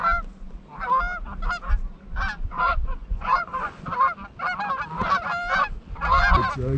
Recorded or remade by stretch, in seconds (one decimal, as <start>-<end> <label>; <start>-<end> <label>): 0.0-2.5 recorded; 2.5-3.8 remade; 3.8-6.8 recorded